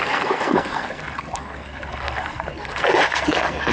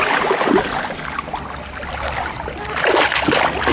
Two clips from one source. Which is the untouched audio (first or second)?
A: second